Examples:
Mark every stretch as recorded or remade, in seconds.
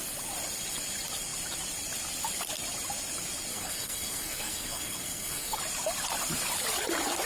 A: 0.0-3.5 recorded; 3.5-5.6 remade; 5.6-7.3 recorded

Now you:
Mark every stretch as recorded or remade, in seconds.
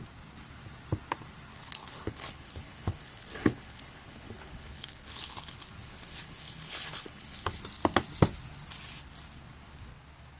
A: 0.0-1.5 recorded; 1.5-5.3 remade; 5.3-5.8 recorded; 5.8-7.6 remade; 7.6-10.4 recorded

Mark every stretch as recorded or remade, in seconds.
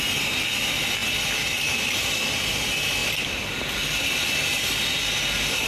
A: 0.0-5.7 recorded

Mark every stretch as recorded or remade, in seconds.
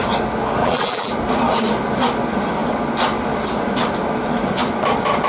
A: 0.0-0.6 recorded; 0.6-1.1 remade; 1.1-5.3 recorded